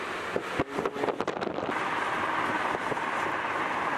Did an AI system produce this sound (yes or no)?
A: no